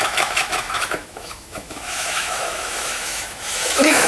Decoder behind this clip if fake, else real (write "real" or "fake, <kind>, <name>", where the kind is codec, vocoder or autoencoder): fake, autoencoder, DAC-VAE